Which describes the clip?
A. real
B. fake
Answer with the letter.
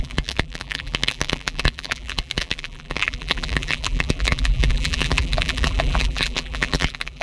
B